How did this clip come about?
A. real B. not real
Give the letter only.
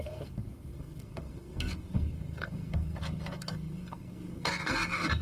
B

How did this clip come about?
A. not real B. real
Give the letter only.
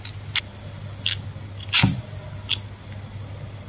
B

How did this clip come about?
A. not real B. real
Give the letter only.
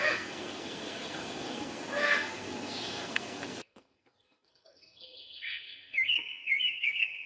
A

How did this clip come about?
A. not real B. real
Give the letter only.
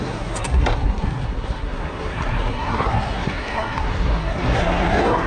A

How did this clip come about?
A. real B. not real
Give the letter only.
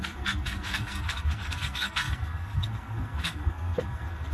B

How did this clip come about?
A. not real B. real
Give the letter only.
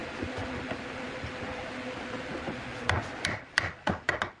B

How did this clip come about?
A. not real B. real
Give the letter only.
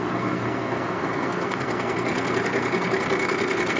A